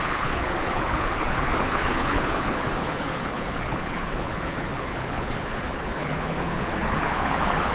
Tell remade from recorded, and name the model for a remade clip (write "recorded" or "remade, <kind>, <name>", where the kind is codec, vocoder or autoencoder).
remade, codec, HILCodec